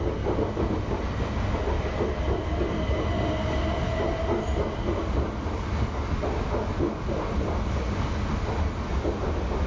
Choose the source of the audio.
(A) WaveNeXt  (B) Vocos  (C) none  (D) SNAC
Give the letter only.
C